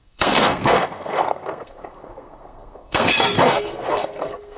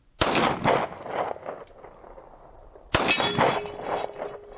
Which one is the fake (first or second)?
first